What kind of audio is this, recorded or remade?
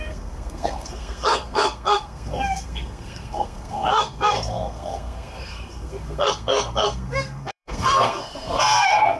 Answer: remade